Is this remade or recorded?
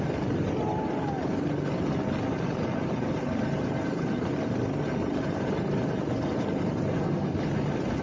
recorded